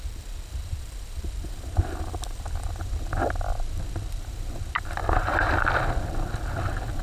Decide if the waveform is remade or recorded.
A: recorded